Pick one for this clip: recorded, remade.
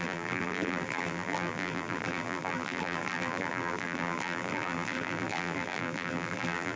remade